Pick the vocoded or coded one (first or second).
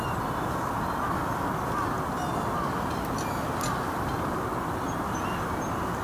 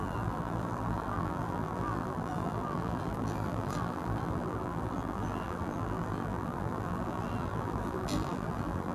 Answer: second